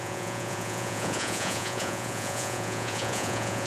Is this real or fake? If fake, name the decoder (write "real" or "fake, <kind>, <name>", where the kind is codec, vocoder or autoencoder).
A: fake, vocoder, Vocos